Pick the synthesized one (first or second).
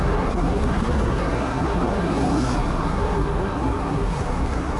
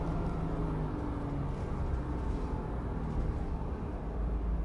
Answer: first